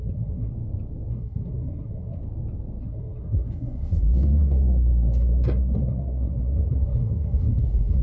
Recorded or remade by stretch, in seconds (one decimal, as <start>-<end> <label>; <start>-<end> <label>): 0.0-0.5 remade; 0.5-1.1 recorded; 1.1-2.2 remade; 2.2-2.8 recorded; 2.8-8.0 remade